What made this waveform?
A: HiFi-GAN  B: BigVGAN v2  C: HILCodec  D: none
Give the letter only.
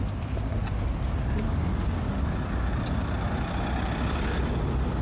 D